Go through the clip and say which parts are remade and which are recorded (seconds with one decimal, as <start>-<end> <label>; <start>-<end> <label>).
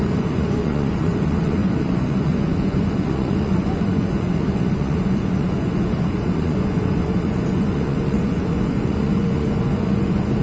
0.0-10.4 remade